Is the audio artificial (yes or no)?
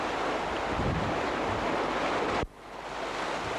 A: no